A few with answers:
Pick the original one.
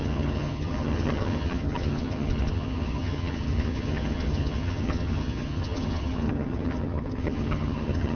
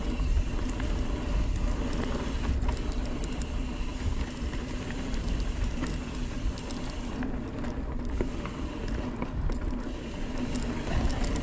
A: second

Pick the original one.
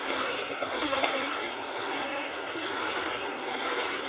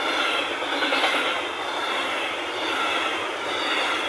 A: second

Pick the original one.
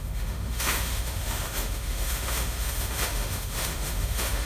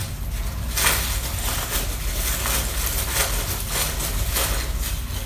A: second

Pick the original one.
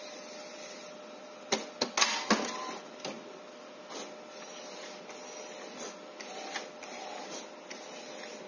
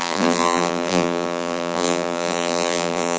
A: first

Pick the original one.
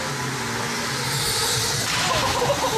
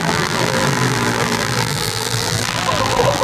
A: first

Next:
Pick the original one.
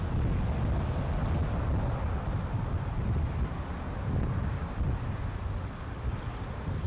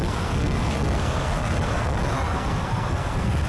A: first